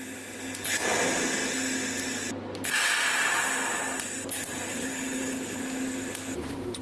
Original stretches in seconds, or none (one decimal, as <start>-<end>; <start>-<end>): 0.0-4.7; 5.6-6.8